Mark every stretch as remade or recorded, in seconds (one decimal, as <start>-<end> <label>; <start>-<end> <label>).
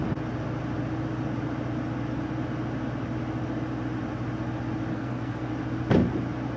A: 0.0-4.9 recorded; 4.9-5.5 remade; 5.5-6.6 recorded